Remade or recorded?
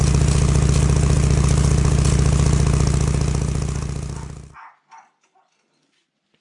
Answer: recorded